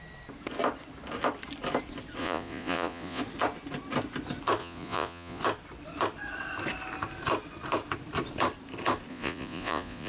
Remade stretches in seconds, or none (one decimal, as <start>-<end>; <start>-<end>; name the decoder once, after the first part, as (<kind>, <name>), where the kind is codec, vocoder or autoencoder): 2.2-3.2 (vocoder, Vocos); 4.6-5.4; 9.1-10.1

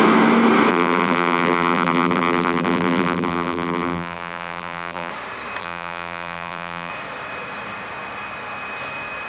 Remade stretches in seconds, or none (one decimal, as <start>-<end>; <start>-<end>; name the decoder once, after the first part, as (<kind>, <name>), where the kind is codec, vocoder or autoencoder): 0.7-5.1 (vocoder, BigVGAN v2); 5.6-6.9

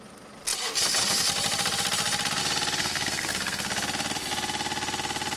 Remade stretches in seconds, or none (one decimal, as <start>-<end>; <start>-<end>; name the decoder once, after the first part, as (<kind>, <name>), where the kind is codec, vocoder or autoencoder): 2.8-3.7 (codec, SNAC)

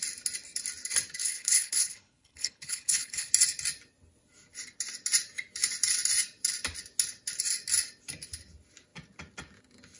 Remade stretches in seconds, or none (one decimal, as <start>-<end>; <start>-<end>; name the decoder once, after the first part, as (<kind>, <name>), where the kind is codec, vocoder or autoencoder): 1.2-3.3 (codec, HILCodec)

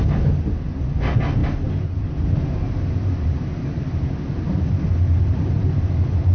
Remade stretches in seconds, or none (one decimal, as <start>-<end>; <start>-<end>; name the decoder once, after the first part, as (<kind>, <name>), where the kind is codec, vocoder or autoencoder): none